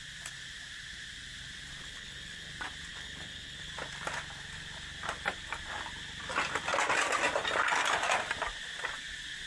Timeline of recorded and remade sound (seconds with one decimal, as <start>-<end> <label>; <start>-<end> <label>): 0.0-1.8 recorded; 1.8-2.5 remade; 2.5-2.9 recorded; 2.9-3.7 remade; 3.7-9.5 recorded